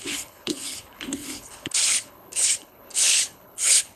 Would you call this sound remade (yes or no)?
yes